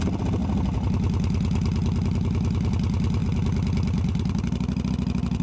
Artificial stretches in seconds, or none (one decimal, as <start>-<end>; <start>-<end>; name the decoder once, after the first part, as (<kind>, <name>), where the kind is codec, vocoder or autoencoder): none